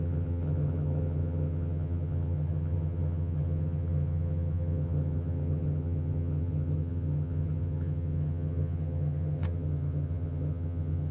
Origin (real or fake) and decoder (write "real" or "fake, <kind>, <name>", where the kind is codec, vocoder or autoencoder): fake, vocoder, HiFi-GAN